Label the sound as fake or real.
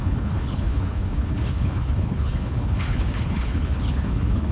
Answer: fake